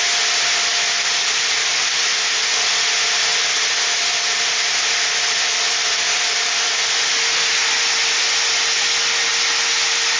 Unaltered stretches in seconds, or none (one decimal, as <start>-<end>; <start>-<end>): 0.0-0.7; 2.5-3.3; 7.1-10.2